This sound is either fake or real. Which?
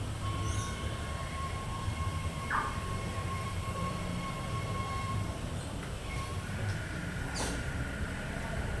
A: fake